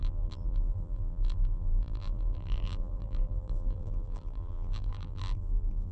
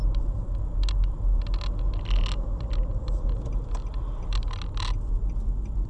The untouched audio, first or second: second